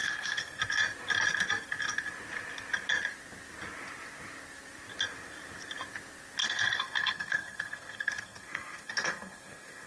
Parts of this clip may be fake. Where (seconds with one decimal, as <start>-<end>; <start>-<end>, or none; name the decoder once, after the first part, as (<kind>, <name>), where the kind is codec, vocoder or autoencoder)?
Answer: 0.0-0.6 (codec, SNAC); 6.4-9.9